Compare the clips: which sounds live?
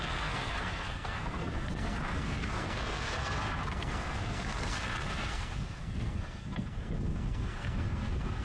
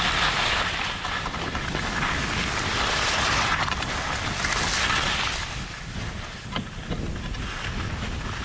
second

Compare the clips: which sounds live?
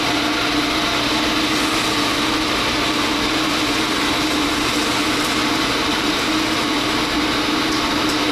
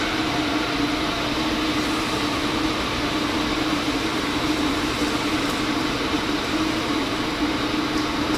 first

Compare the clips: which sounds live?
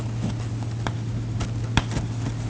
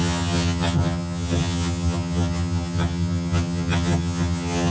first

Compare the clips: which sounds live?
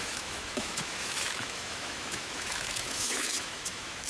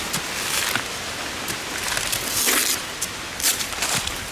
second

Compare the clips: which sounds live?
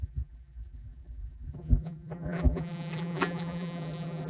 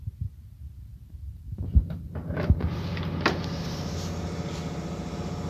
second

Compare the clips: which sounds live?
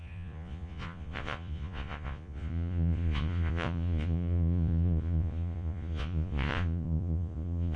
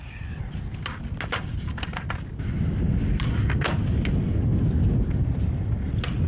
second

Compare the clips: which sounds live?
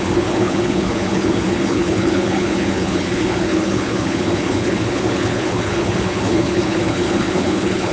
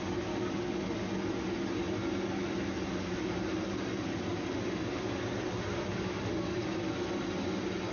second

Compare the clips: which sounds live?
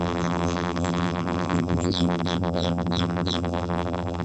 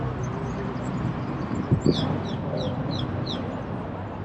second